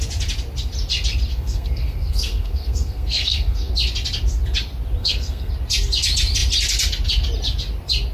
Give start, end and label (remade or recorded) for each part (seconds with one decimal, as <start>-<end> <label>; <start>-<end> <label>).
0.0-1.3 recorded; 1.3-3.7 remade; 3.7-5.0 recorded; 5.0-5.5 remade; 5.5-8.1 recorded